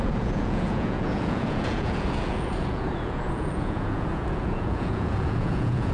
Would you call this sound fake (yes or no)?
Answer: yes